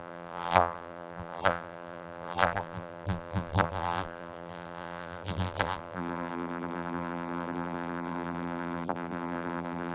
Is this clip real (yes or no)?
no